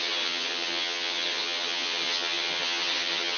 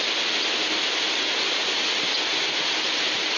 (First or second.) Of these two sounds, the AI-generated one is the first